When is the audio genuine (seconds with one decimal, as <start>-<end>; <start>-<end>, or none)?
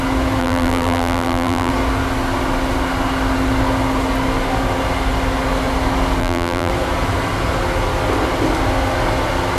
0.0-0.4; 1.7-6.2; 6.7-9.6